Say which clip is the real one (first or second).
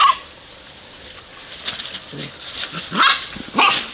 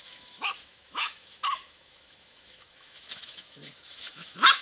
first